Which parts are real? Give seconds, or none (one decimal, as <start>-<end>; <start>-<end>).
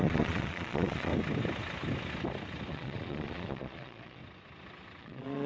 1.1-2.7; 4.2-5.0